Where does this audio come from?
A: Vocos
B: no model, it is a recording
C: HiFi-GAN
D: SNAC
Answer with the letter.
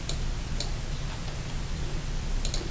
B